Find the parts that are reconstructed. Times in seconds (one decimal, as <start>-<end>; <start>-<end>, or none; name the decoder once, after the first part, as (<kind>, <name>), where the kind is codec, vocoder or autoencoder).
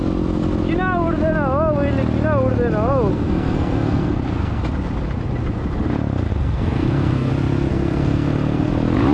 3.1-4.6 (codec, SNAC); 6.3-7.3; 7.7-8.7